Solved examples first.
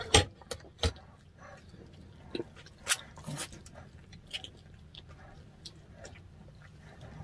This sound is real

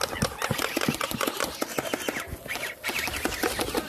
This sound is real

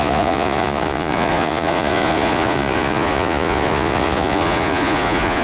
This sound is fake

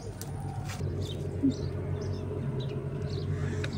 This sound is real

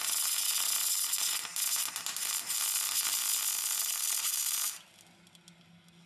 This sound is real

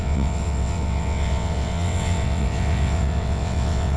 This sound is fake